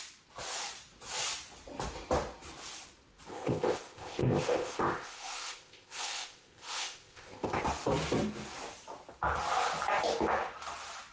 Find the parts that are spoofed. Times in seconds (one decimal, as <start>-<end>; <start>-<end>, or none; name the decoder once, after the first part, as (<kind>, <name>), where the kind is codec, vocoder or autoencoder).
3.3-7.6 (codec, ZipCodec)